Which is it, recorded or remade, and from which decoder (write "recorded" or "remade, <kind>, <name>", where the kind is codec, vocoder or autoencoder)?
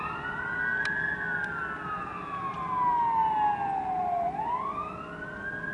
recorded